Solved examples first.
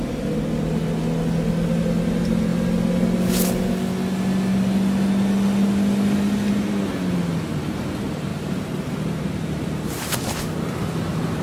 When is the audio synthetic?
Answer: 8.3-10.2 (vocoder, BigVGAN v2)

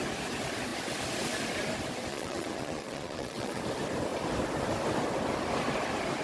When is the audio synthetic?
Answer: 2.1-3.6 (vocoder, Vocos)